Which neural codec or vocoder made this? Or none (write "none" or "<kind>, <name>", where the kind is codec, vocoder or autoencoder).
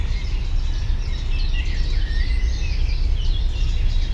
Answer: none